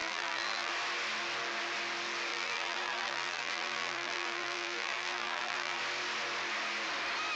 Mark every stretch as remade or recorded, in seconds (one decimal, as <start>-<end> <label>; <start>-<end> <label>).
0.0-0.7 remade; 0.7-2.3 recorded; 2.3-5.8 remade; 5.8-7.4 recorded